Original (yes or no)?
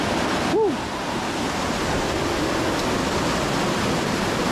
yes